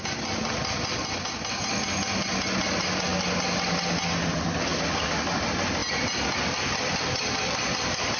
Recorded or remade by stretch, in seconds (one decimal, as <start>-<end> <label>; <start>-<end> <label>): 0.0-5.8 recorded; 5.8-8.2 remade